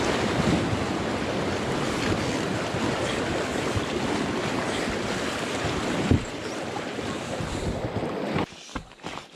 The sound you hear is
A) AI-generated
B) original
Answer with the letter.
B